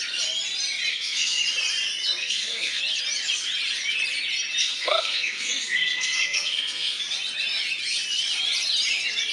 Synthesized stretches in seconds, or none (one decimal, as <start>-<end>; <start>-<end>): 0.9-1.4; 2.2-2.8; 4.6-7.0